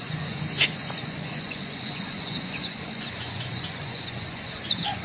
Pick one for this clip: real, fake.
fake